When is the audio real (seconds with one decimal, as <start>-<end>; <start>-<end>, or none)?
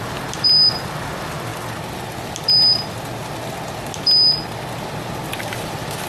1.5-4.8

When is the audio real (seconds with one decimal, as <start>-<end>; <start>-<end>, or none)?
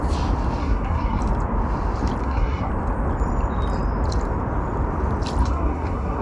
0.0-0.6; 1.2-2.2; 2.7-5.4